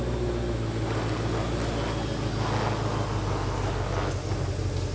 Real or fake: real